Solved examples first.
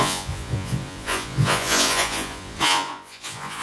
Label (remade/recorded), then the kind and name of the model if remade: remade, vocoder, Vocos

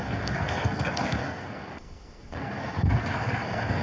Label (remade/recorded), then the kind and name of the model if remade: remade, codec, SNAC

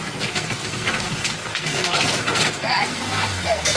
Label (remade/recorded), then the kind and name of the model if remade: remade, codec, SNAC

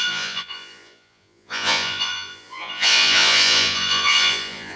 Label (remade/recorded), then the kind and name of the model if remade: remade, vocoder, Vocos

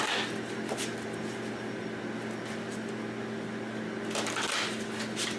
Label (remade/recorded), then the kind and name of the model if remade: recorded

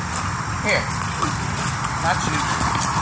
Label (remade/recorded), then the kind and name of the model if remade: recorded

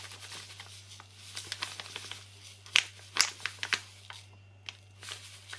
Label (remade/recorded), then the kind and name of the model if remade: recorded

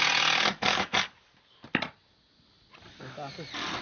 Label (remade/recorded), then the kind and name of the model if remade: recorded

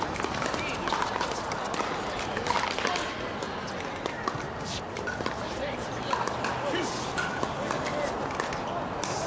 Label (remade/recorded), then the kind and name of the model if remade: recorded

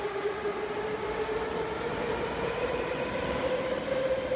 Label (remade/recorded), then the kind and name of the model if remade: recorded